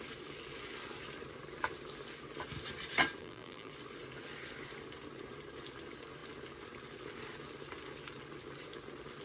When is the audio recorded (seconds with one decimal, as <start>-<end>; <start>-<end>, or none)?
0.0-3.2; 3.7-9.2